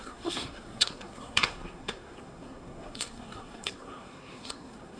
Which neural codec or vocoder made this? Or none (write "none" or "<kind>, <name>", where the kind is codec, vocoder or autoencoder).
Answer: codec, SNAC